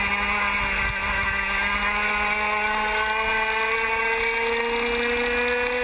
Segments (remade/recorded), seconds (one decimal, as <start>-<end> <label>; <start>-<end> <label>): 0.0-5.8 recorded